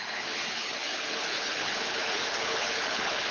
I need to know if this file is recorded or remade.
remade